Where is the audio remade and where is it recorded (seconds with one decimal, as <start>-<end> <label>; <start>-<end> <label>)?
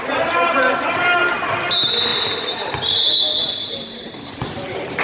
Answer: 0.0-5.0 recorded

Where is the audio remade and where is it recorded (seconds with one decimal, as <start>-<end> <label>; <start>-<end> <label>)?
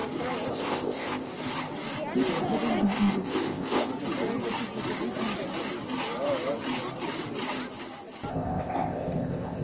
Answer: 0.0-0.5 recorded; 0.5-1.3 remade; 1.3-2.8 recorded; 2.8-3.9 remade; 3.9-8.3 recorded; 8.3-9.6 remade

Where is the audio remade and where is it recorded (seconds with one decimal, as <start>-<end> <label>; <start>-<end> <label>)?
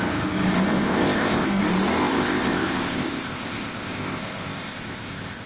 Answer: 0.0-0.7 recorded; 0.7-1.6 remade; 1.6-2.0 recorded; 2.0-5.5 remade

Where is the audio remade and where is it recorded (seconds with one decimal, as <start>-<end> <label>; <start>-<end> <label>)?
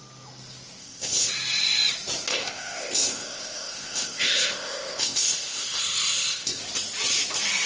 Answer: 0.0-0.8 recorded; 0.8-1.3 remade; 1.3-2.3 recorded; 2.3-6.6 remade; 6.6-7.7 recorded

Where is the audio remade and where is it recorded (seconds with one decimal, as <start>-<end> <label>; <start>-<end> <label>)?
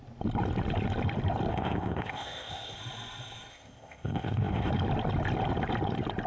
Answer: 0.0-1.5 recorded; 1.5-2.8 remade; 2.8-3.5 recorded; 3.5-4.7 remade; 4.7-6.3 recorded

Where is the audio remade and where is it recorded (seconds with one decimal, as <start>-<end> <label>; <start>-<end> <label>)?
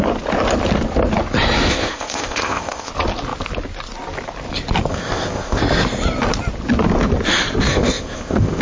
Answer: 0.0-1.7 recorded; 1.7-2.9 remade; 2.9-4.9 recorded; 4.9-5.6 remade; 5.6-7.7 recorded; 7.7-8.6 remade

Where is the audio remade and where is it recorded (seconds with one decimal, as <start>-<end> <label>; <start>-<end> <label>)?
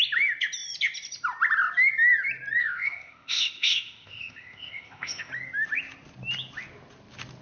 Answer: 0.0-2.6 recorded; 2.6-5.3 remade; 5.3-7.4 recorded